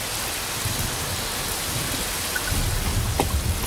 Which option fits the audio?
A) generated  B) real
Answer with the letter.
B